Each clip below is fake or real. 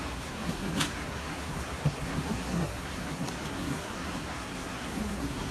fake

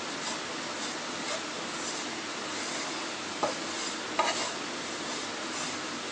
real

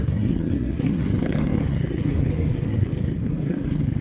fake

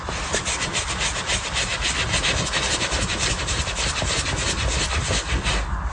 real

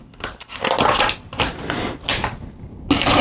real